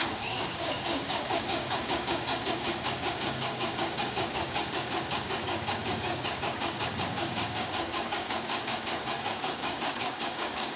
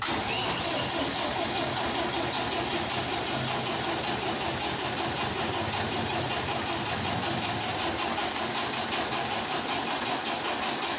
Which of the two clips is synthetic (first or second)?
first